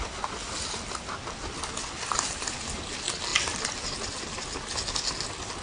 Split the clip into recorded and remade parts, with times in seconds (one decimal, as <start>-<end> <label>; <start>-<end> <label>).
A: 0.0-5.6 recorded